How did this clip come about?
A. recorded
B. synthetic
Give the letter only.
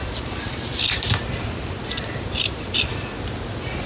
A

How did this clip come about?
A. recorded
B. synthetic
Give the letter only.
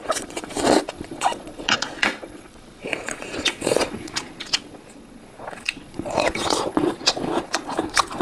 B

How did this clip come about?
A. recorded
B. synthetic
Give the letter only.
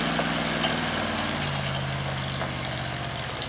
A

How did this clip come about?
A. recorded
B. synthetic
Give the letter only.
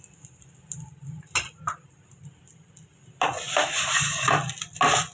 A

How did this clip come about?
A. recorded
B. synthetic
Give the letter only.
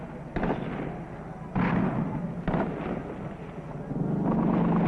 A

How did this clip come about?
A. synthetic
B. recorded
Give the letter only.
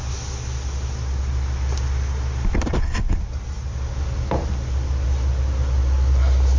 B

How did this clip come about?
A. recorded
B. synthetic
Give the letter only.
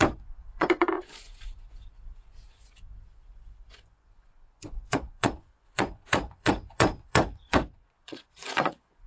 B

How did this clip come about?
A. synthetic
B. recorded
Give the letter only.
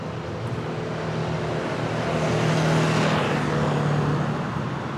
B